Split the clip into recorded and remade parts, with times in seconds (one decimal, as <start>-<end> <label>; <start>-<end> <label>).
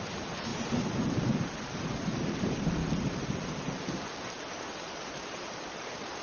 0.0-2.8 remade; 2.8-4.5 recorded; 4.5-6.2 remade